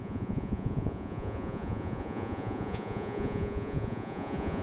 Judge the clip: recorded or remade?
remade